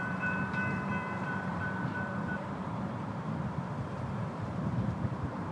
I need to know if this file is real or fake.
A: fake